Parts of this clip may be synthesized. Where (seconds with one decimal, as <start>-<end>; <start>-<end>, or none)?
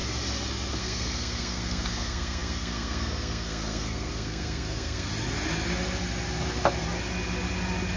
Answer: 0.7-5.1